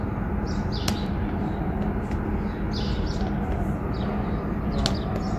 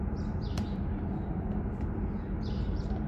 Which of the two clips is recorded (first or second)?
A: first